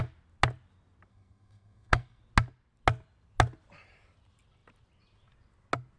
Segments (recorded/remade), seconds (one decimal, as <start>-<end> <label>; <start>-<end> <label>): 0.0-1.1 recorded; 1.1-2.2 remade; 2.2-6.0 recorded